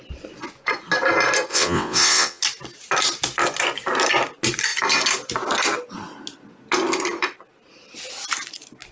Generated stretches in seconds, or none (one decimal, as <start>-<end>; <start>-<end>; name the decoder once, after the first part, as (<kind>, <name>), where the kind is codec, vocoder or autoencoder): 1.5-2.4 (vocoder, WaveNeXt)